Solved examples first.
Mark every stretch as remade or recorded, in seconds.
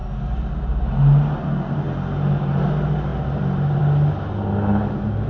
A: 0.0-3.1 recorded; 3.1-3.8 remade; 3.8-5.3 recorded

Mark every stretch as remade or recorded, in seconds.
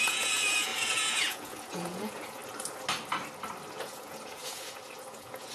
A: 0.0-2.4 remade; 2.4-3.7 recorded; 3.7-5.5 remade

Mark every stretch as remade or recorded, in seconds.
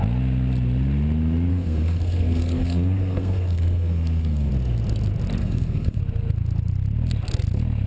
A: 0.0-1.5 recorded; 1.5-4.5 remade; 4.5-5.4 recorded; 5.4-6.0 remade; 6.0-7.9 recorded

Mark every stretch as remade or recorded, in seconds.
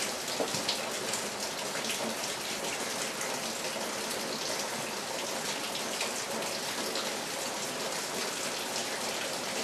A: 0.0-8.8 recorded; 8.8-9.6 remade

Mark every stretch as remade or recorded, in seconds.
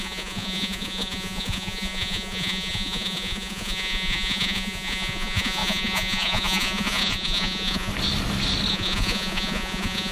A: 0.0-7.9 remade; 7.9-8.7 recorded; 8.7-10.1 remade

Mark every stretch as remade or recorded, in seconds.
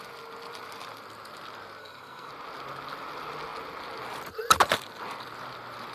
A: 0.0-1.8 recorded; 1.8-2.3 remade; 2.3-5.9 recorded